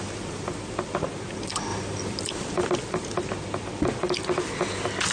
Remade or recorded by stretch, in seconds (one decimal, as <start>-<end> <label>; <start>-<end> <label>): 0.0-1.7 recorded; 1.7-2.7 remade; 2.7-5.1 recorded